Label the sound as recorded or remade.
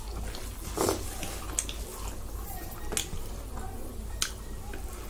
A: recorded